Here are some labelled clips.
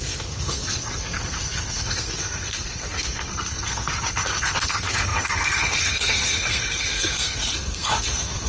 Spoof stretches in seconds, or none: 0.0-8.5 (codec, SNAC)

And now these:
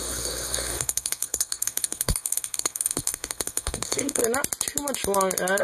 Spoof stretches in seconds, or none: 0.0-4.2 (codec, SNAC)